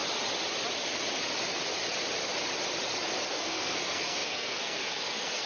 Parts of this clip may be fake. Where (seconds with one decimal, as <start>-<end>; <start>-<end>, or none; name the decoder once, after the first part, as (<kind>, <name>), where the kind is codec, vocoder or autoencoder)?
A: 3.3-5.5 (codec, SNAC)